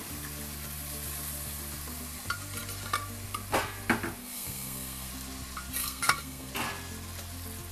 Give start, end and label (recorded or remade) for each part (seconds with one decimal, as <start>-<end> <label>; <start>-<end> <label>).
0.0-4.2 recorded; 4.2-5.1 remade; 5.1-5.8 recorded; 5.8-6.5 remade; 6.5-7.7 recorded